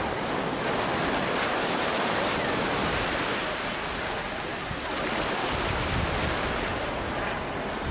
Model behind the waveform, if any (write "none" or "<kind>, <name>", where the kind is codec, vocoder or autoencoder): none